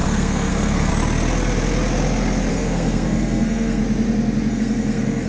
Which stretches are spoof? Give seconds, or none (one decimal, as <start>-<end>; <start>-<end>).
0.0-0.9; 2.5-3.8; 4.5-5.3

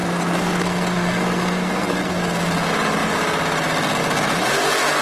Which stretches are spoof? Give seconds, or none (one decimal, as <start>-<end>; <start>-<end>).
0.0-2.2